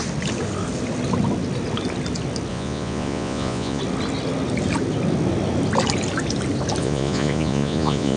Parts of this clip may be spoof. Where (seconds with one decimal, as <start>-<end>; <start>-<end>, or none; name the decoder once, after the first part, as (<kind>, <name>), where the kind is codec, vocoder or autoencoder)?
2.5-3.8 (vocoder, Vocos); 6.8-8.2